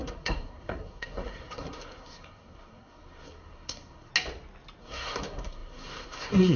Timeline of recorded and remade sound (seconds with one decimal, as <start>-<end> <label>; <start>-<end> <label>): 0.0-4.1 remade; 4.1-4.8 recorded; 4.8-6.6 remade